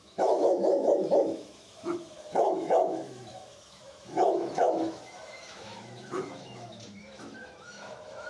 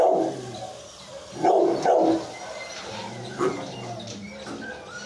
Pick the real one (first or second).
second